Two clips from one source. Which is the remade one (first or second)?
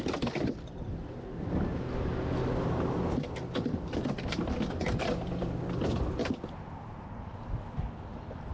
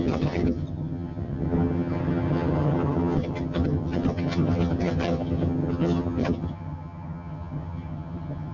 second